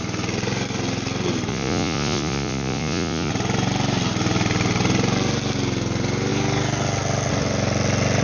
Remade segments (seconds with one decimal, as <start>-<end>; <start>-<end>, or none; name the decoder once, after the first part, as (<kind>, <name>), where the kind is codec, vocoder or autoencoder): 1.5-3.3 (vocoder, Vocos)

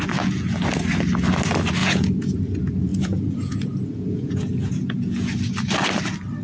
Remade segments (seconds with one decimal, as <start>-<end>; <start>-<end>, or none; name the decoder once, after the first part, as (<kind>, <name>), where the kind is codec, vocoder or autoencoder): 1.8-2.4 (vocoder, Vocos); 2.9-5.3